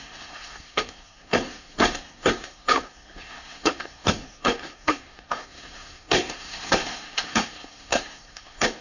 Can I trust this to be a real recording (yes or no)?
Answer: no